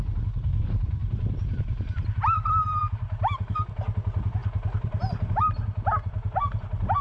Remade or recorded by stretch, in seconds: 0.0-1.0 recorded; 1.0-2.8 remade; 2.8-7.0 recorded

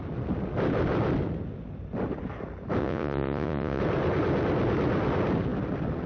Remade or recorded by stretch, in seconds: 0.0-2.8 recorded; 2.8-3.8 remade; 3.8-6.1 recorded